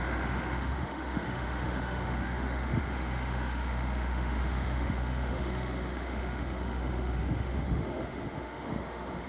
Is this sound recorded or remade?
remade